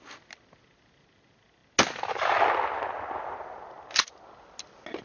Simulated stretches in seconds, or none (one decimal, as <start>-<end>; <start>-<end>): none